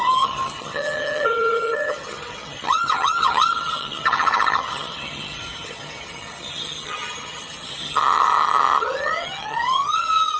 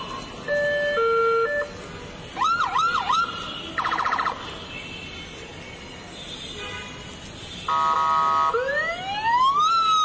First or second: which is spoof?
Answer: first